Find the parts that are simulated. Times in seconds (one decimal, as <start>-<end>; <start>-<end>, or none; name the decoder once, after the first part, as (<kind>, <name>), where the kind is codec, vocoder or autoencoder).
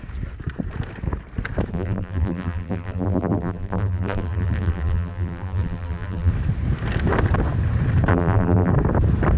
1.7-6.3 (vocoder, BigVGAN v2); 8.1-8.7